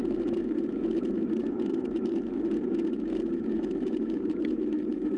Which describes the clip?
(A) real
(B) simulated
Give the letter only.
B